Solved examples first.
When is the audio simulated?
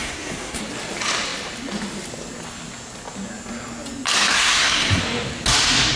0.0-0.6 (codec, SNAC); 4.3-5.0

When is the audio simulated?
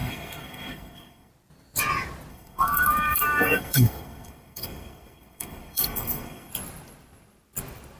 0.0-1.3 (codec, SNAC); 2.3-6.5